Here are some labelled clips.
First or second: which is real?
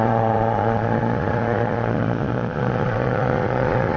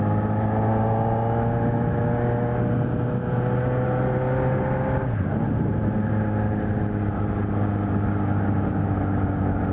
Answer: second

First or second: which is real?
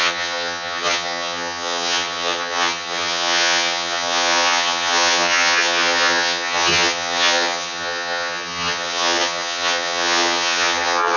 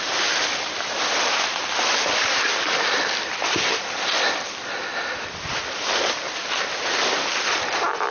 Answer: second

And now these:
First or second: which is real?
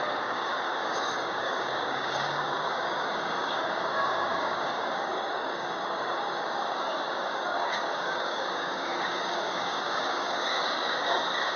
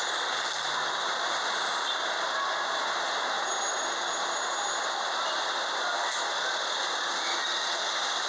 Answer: second